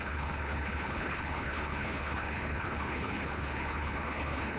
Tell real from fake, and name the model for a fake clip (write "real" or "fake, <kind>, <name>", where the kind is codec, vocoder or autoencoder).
fake, codec, HILCodec